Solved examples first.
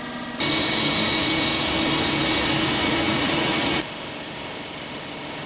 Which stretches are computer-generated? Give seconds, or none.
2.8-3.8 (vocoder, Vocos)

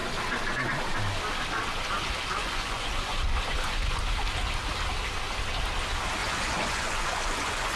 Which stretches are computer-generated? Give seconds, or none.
2.4-4.0 (vocoder, Vocos); 6.2-7.8

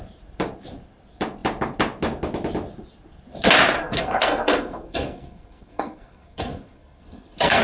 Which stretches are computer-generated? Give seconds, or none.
3.8-7.6 (codec, SNAC)

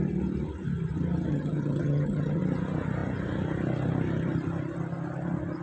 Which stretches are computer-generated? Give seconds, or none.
1.3-2.4 (vocoder, HiFi-GAN)

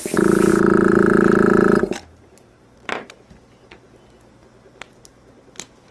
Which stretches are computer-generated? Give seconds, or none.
0.5-3.1 (vocoder, BigVGAN v2)

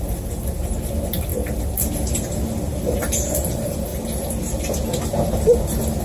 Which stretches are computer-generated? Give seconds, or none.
none

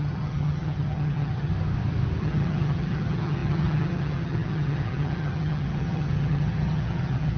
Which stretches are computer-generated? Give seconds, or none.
0.0-1.5 (vocoder, HiFi-GAN); 2.2-7.4

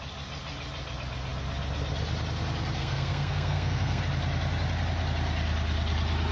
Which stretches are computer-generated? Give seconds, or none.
2.8-4.0 (codec, SNAC)